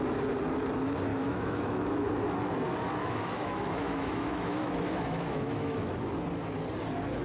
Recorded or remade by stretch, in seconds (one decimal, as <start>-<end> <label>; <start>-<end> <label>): 0.0-1.1 recorded; 1.1-2.1 remade; 2.1-3.0 recorded; 3.0-6.0 remade; 6.0-7.2 recorded